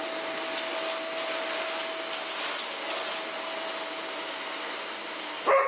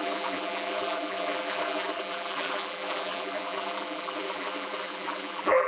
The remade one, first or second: second